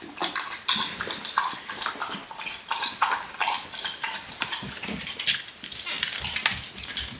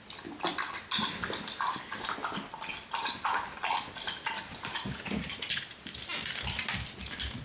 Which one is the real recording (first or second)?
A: second